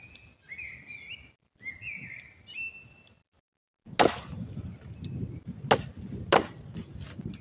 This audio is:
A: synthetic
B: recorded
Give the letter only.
B